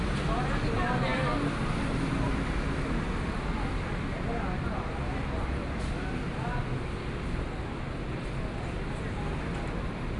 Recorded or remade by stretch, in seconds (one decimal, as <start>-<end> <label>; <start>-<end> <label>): 0.0-10.2 recorded